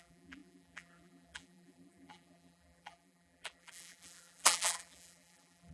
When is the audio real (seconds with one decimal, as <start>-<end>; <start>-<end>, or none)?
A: none